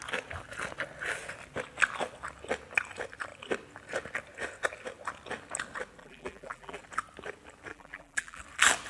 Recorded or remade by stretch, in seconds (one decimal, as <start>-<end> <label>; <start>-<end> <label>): 0.0-6.0 recorded; 6.0-6.8 remade; 6.8-7.7 recorded; 7.7-8.4 remade; 8.4-8.9 recorded